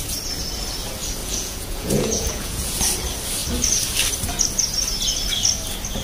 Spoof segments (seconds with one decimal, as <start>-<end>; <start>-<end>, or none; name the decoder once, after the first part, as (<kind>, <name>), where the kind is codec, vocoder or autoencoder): 1.2-2.8 (vocoder, Vocos)